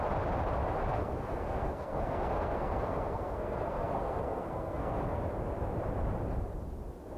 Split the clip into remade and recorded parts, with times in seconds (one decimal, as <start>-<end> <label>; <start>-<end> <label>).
0.0-0.9 recorded; 0.9-5.2 remade; 5.2-7.2 recorded